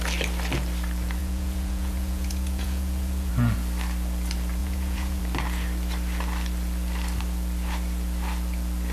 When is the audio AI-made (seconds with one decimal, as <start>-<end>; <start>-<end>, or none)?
1.2-3.3; 4.6-5.2